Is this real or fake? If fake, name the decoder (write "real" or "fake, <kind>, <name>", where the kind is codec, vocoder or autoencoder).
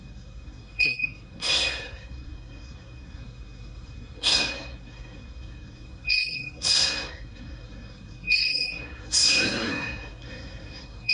fake, codec, SNAC